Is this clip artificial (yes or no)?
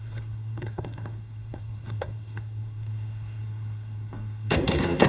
yes